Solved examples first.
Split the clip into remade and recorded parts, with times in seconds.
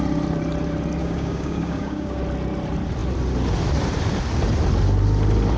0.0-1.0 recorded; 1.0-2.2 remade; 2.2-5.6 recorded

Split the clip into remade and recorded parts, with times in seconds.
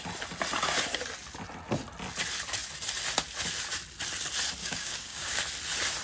0.0-4.6 recorded; 4.6-5.4 remade; 5.4-6.0 recorded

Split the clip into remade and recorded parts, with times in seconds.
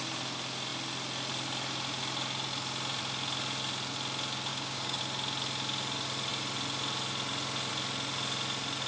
0.0-4.5 recorded; 4.5-5.0 remade; 5.0-8.9 recorded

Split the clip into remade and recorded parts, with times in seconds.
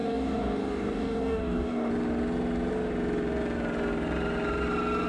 0.0-1.9 remade; 1.9-5.1 recorded